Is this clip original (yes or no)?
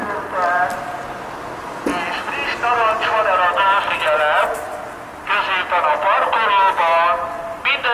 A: yes